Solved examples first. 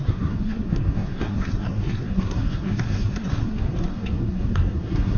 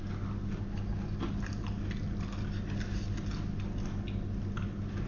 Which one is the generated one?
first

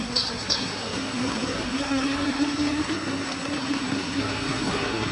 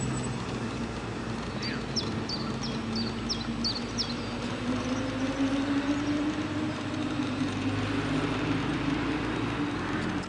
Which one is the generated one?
first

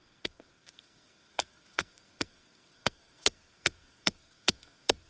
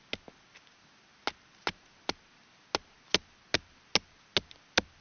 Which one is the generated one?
first